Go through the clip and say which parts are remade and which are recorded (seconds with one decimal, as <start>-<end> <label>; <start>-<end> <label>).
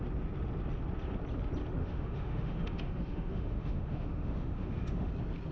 0.0-1.8 recorded; 1.8-5.1 remade; 5.1-5.5 recorded